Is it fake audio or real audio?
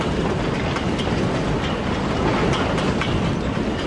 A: real